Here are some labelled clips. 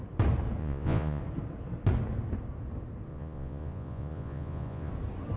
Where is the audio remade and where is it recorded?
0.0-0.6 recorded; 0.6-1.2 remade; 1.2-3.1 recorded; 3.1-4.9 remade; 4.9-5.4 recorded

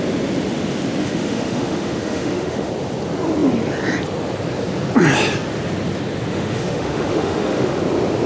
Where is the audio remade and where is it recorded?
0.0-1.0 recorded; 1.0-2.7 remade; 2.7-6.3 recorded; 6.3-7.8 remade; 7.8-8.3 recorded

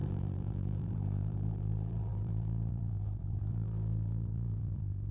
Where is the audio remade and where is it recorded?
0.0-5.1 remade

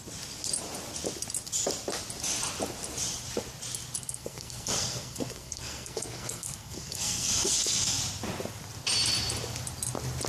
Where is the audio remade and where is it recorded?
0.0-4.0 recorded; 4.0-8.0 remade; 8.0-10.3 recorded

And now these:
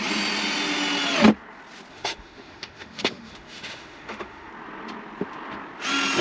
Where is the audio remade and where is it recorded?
0.0-1.9 recorded; 1.9-4.5 remade; 4.5-6.2 recorded

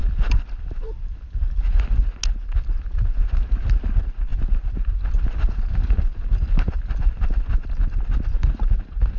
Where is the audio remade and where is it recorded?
0.0-9.2 recorded